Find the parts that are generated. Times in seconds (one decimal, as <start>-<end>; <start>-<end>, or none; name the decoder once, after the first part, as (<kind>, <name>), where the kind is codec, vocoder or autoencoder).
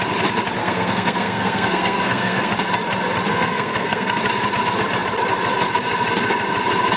0.6-2.5 (codec, SNAC); 3.3-4.2